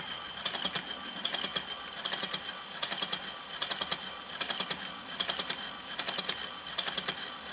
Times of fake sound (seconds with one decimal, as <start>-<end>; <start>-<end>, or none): none